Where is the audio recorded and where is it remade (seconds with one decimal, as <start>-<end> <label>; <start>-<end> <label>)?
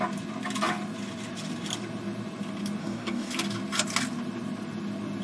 0.0-2.8 recorded; 2.8-3.3 remade; 3.3-5.2 recorded